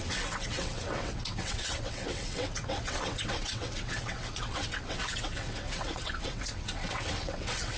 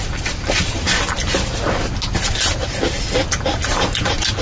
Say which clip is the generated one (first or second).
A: first